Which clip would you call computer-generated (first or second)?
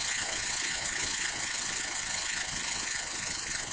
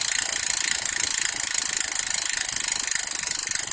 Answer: first